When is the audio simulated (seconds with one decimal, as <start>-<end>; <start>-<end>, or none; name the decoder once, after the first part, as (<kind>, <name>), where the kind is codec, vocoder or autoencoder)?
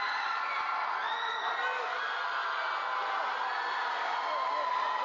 1.0-1.5 (vocoder, Vocos)